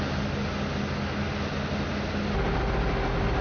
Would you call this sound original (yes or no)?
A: yes